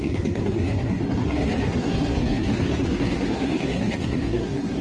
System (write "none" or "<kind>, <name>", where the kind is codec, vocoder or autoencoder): codec, SNAC